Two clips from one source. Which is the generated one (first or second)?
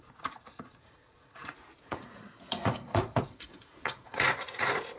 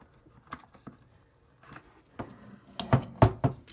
first